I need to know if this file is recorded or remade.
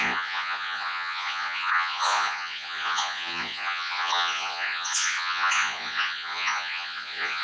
remade